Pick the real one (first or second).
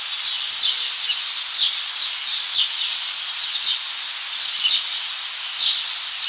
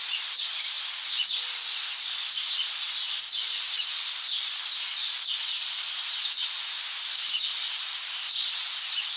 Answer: first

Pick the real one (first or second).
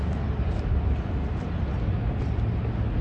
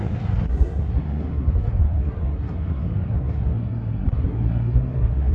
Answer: first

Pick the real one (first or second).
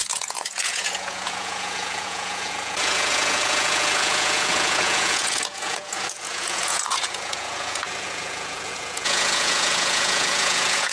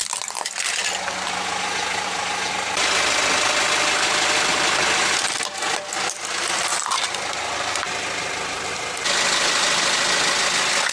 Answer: second